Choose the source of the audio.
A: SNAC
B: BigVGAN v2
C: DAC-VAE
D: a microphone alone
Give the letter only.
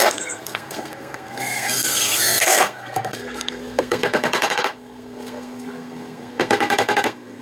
A